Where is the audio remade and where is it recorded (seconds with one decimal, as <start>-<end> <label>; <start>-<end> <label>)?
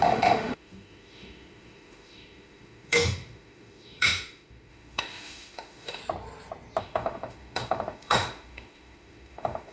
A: 0.0-6.0 remade; 6.0-6.8 recorded; 6.8-9.7 remade